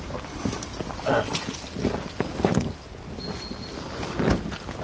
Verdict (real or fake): real